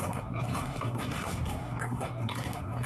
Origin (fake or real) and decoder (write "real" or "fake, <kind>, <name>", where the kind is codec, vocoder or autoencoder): fake, codec, SNAC